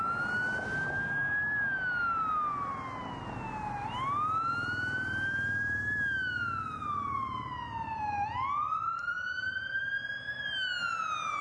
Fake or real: real